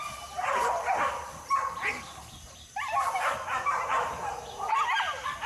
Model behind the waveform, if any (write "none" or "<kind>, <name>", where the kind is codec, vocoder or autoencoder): none